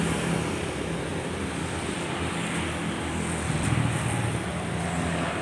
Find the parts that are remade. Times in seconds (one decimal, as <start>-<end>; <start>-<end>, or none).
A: none